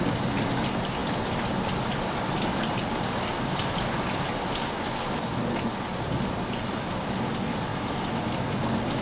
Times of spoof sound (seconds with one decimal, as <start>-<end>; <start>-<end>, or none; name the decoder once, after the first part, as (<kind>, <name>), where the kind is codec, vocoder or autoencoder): none